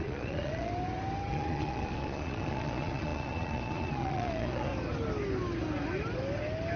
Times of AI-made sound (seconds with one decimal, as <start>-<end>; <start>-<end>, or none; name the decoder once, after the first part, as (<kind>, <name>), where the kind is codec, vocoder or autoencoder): 0.0-0.7 (vocoder, Vocos); 1.3-4.7